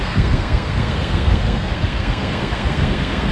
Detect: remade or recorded remade